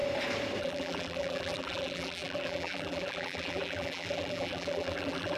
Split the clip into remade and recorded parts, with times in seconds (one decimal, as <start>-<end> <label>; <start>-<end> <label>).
0.0-0.6 recorded; 0.6-5.4 remade